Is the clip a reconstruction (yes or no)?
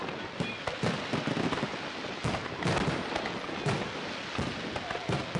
no